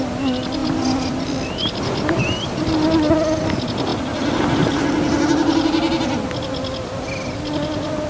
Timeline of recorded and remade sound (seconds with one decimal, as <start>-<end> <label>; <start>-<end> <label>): 0.0-0.6 recorded; 0.6-2.7 remade; 2.7-8.1 recorded